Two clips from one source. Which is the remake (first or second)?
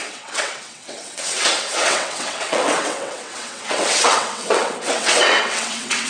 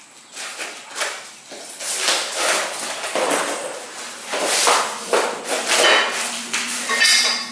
first